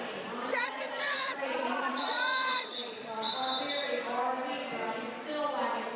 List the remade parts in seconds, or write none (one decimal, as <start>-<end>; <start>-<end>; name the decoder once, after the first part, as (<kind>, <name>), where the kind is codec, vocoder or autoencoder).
0.5-3.3 (vocoder, Vocos)